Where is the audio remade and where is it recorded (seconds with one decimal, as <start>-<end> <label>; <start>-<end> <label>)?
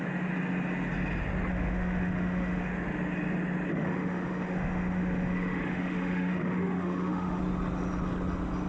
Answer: 0.0-1.5 recorded; 1.5-2.6 remade; 2.6-3.7 recorded; 3.7-7.4 remade; 7.4-8.7 recorded